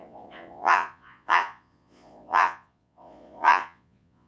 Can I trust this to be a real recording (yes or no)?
no